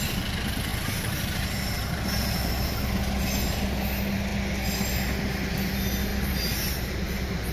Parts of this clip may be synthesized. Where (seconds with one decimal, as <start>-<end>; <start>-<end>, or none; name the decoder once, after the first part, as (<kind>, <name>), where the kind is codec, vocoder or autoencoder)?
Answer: 0.7-2.5 (vocoder, BigVGAN v2); 6.1-7.5